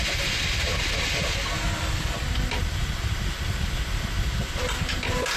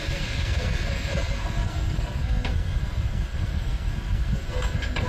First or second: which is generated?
second